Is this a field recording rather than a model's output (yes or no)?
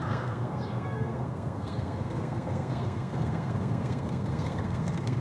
no